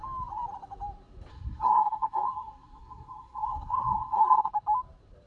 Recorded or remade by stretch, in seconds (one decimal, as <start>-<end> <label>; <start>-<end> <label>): 0.0-1.3 recorded; 1.3-4.5 remade; 4.5-5.3 recorded